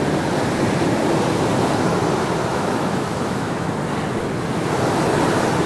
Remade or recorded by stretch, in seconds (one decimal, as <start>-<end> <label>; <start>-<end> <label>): 0.0-2.5 recorded; 2.5-3.7 remade; 3.7-5.7 recorded